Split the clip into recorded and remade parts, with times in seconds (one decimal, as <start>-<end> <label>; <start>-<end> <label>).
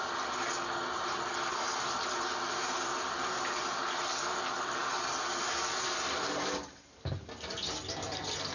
0.0-8.5 recorded